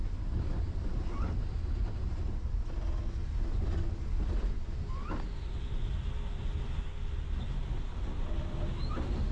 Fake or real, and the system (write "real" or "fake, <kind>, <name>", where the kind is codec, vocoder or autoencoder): real